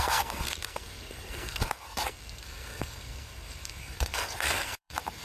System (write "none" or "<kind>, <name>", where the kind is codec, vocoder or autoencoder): codec, SNAC